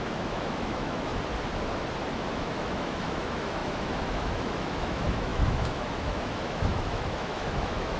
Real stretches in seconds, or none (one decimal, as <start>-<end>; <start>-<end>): 1.1-2.3